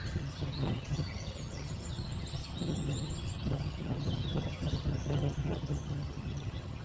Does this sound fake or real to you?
fake